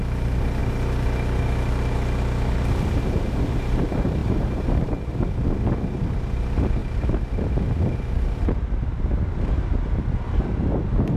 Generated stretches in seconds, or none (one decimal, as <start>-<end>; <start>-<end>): 4.2-4.9; 6.8-7.5